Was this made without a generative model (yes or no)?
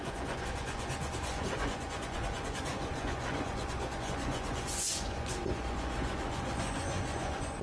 no